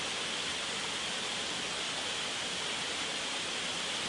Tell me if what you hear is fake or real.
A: real